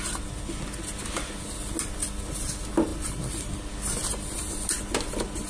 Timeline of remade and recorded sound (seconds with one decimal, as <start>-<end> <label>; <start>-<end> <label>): 0.0-5.5 recorded